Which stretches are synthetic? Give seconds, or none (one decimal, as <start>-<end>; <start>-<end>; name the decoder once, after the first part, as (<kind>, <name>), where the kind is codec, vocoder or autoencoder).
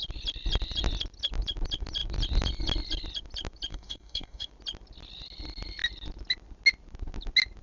3.7-4.5 (codec, DAC)